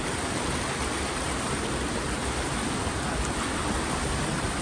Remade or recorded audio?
recorded